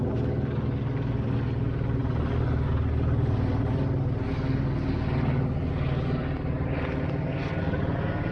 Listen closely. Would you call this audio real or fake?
real